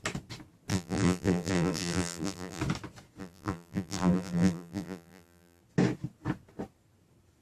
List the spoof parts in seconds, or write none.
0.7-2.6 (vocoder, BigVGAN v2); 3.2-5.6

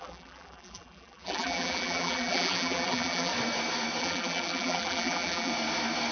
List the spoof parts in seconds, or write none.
0.0-3.3 (vocoder, BigVGAN v2); 4.0-5.5

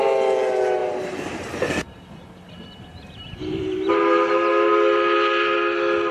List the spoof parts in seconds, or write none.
0.8-3.9 (vocoder, BigVGAN v2)

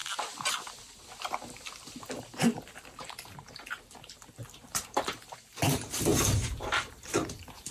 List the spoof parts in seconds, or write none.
3.0-7.7 (vocoder, BigVGAN v2)

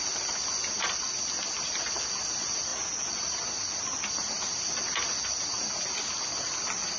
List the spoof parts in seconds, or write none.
none

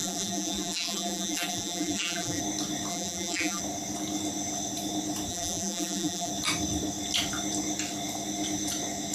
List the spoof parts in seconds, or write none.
0.0-2.4 (vocoder, BigVGAN v2); 2.9-3.6; 5.3-6.3